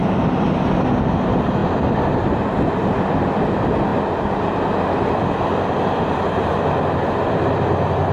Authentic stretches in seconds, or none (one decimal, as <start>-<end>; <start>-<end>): 0.0-8.1